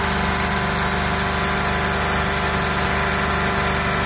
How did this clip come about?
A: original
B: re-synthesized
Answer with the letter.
A